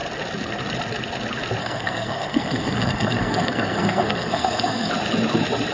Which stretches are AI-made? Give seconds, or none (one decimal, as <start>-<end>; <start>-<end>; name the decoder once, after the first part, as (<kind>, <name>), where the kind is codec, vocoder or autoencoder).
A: 1.6-4.9 (codec, SNAC)